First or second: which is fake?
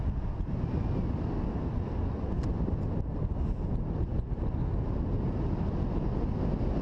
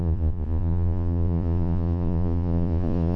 second